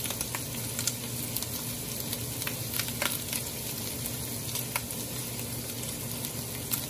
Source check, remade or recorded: recorded